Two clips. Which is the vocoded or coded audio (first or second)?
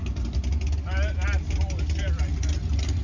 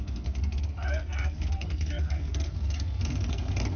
second